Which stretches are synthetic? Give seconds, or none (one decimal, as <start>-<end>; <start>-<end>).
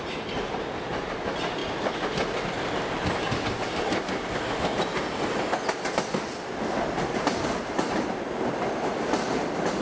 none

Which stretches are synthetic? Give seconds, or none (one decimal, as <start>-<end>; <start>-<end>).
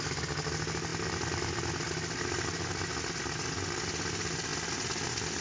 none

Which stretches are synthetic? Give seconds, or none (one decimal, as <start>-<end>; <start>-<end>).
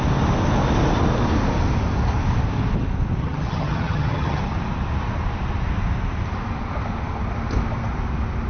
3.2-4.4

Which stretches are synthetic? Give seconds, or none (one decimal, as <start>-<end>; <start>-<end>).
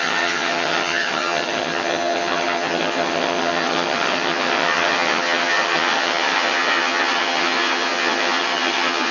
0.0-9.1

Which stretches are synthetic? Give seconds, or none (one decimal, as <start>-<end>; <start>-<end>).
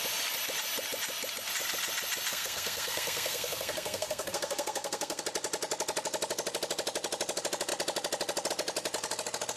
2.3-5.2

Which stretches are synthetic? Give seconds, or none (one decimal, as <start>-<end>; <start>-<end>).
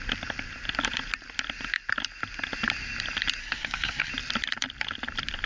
3.4-4.1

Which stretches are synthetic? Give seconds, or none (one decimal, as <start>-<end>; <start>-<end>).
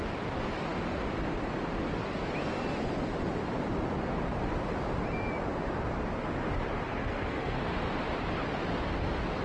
6.9-7.6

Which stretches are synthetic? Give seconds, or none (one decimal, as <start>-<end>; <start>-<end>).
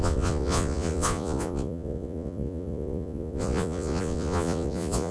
0.0-5.1